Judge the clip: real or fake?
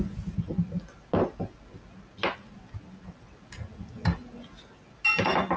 real